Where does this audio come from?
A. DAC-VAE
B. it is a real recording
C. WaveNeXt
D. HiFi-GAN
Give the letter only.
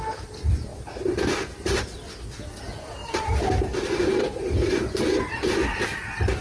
B